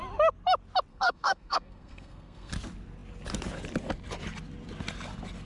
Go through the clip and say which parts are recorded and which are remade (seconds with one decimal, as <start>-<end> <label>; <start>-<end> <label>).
0.0-0.9 recorded; 0.9-2.5 remade; 2.5-5.5 recorded